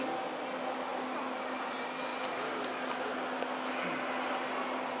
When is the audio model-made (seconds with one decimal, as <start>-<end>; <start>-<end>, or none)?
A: none